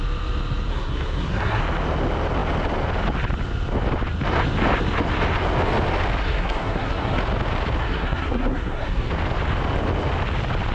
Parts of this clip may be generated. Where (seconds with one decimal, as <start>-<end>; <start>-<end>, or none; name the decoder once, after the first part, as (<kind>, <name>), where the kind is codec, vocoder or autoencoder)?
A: 0.7-1.6 (codec, SNAC); 6.2-7.2; 7.8-9.1